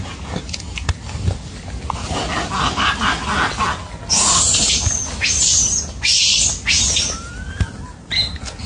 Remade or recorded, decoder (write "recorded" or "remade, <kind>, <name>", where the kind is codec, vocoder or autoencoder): recorded